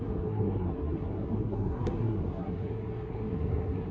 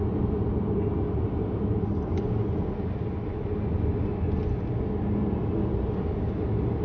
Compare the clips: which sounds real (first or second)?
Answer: second